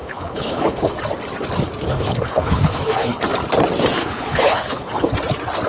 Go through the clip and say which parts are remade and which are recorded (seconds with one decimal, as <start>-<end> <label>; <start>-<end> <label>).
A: 0.0-1.0 remade; 1.0-1.9 recorded; 1.9-3.2 remade; 3.2-4.0 recorded; 4.0-5.1 remade; 5.1-5.7 recorded